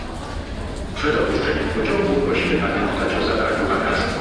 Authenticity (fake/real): real